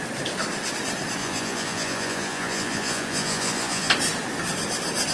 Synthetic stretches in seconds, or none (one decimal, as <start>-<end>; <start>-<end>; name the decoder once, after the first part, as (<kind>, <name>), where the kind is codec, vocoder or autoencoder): 1.2-3.9 (vocoder, Vocos)